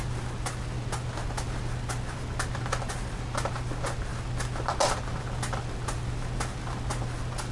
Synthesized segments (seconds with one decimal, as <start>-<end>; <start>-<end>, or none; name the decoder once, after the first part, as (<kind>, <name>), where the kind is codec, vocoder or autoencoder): none